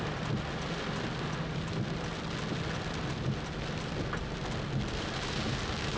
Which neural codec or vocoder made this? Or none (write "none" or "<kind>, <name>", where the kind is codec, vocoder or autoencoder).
none